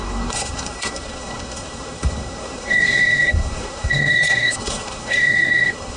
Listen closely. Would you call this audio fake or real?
fake